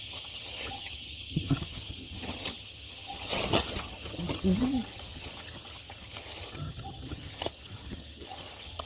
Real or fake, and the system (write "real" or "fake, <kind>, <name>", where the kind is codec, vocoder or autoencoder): fake, vocoder, HiFi-GAN